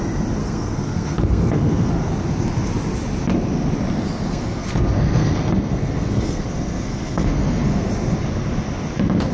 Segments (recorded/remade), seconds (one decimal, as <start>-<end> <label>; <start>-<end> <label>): 0.0-0.4 recorded; 0.4-1.9 remade; 1.9-4.3 recorded; 4.3-7.9 remade; 7.9-9.3 recorded